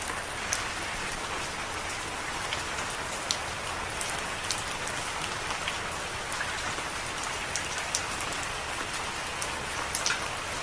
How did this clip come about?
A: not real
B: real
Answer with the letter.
B